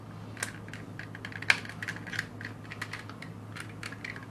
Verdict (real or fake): real